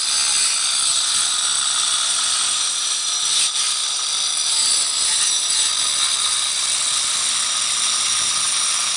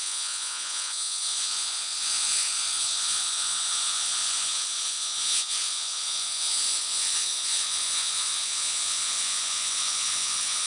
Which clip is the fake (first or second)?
second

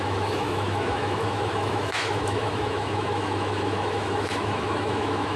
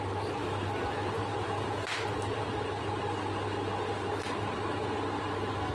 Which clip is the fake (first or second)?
first